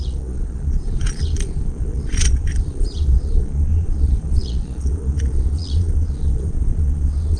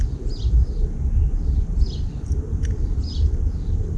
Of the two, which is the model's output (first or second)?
first